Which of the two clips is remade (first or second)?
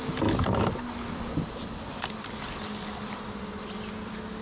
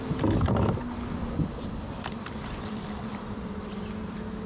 second